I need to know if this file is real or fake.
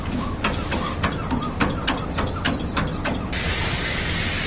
real